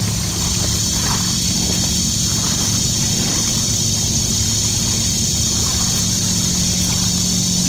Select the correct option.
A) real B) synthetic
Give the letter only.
A